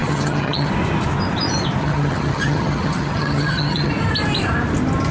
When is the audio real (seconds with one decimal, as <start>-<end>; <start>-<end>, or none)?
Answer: 0.7-1.8; 3.9-5.1